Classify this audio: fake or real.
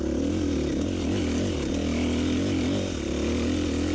real